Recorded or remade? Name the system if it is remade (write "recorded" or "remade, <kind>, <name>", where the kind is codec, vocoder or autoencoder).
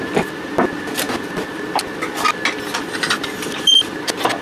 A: recorded